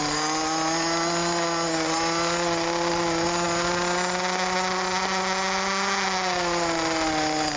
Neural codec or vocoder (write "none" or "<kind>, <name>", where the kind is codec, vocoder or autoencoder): none